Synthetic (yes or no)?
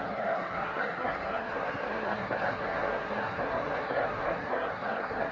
yes